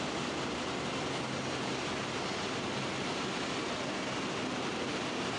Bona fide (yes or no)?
yes